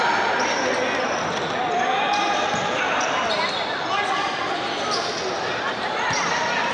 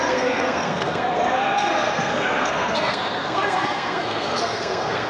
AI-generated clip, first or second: second